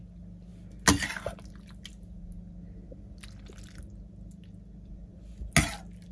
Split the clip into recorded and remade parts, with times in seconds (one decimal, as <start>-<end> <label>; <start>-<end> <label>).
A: 0.0-6.1 recorded